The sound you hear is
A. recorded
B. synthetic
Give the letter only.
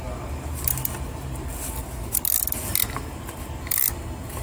A